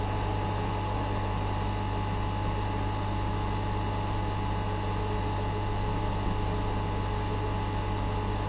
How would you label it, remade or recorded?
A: recorded